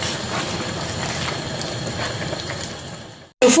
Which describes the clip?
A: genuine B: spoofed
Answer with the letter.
A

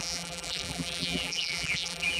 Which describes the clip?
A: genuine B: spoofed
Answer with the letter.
B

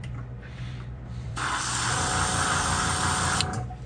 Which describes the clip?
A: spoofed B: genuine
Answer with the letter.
A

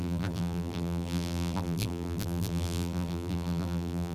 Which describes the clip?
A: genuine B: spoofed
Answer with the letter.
B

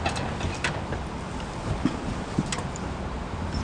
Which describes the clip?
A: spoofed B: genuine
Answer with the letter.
B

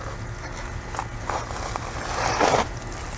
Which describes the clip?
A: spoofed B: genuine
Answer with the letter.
B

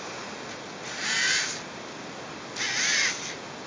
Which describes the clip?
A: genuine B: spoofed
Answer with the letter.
A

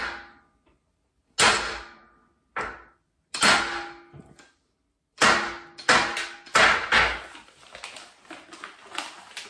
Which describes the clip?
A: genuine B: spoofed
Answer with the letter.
A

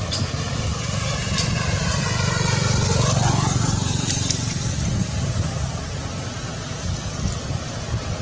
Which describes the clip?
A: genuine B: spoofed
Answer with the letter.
A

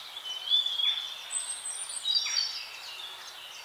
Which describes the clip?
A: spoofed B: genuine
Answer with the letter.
B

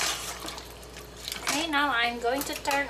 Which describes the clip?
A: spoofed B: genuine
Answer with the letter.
B